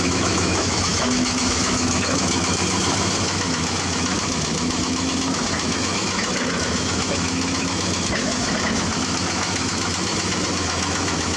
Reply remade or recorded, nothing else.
remade